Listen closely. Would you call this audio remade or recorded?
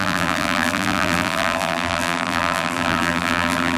remade